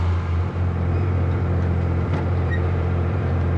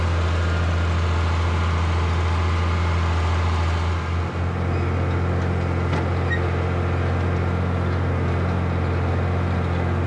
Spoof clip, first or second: first